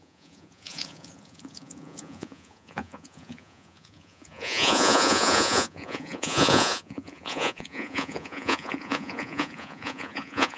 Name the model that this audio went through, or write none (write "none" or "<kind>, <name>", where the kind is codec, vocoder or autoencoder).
vocoder, Vocos